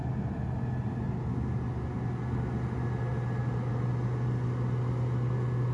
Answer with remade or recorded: recorded